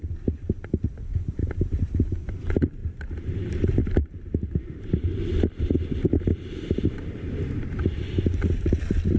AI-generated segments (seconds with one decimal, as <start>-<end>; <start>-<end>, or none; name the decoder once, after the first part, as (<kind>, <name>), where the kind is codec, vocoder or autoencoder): 1.4-1.9 (vocoder, BigVGAN v2); 2.8-5.2; 6.3-6.9